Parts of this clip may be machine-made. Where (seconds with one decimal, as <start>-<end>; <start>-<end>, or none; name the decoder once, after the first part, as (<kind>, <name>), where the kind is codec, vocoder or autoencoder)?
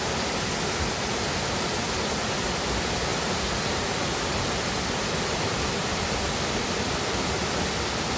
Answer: none